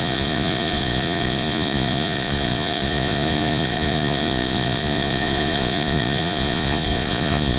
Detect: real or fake fake